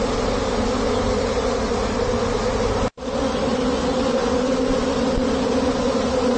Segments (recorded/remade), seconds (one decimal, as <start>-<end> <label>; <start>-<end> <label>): 0.0-6.4 recorded

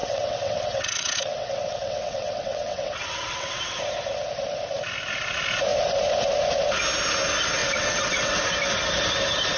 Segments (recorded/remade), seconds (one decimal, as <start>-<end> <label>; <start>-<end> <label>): 0.0-3.8 remade; 3.8-7.6 recorded; 7.6-8.4 remade; 8.4-9.6 recorded